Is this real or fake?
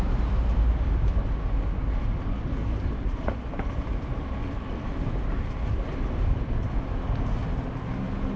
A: real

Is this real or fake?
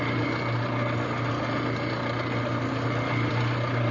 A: real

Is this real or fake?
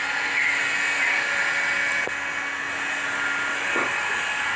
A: real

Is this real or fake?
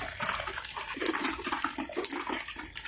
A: real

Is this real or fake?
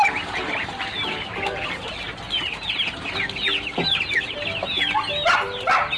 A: real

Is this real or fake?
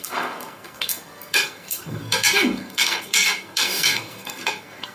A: fake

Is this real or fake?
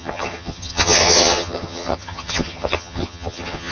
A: fake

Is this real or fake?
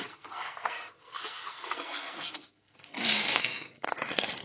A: fake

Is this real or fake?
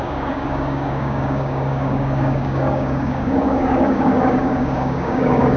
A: fake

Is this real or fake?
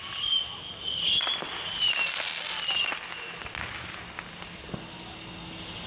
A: real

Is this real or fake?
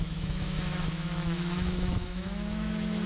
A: fake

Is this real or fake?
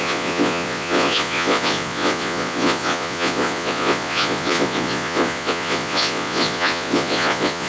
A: fake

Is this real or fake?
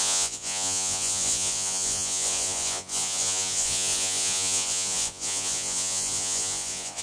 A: fake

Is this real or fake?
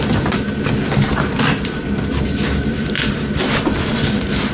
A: real